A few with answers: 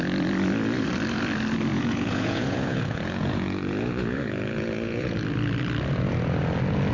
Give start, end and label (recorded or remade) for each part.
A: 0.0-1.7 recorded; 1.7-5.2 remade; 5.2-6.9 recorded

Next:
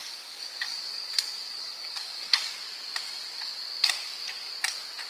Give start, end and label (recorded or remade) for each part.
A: 0.0-2.4 remade; 2.4-5.1 recorded

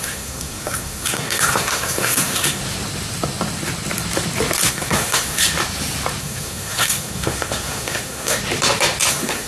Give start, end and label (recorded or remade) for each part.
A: 0.0-2.6 remade; 2.6-4.7 recorded; 4.7-5.4 remade; 5.4-6.2 recorded; 6.2-8.4 remade; 8.4-9.1 recorded; 9.1-9.5 remade

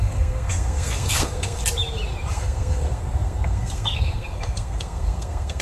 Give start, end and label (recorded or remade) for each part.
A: 0.0-1.6 remade; 1.6-2.3 recorded; 2.3-5.6 remade